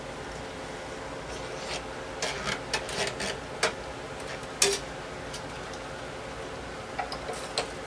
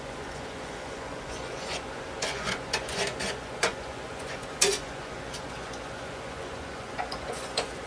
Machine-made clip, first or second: second